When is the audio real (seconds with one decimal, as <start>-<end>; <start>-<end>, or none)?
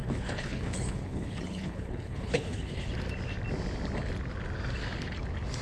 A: 2.9-5.6